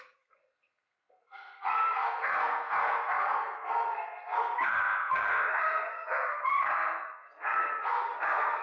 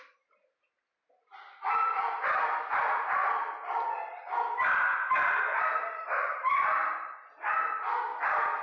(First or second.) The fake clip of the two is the first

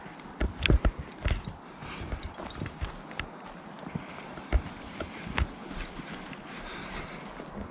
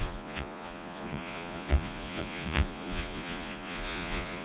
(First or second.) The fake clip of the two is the second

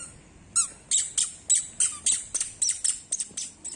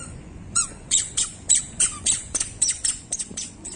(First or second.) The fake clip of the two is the second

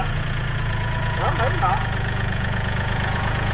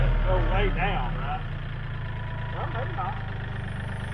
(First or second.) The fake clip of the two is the first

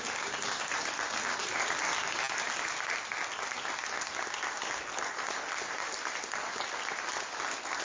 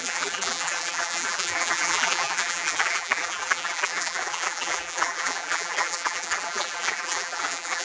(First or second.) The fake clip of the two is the second